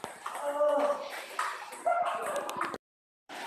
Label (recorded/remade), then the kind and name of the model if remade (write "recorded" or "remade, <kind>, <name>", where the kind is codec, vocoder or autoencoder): remade, vocoder, BigVGAN v2